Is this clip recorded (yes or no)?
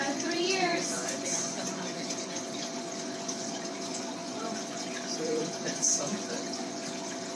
no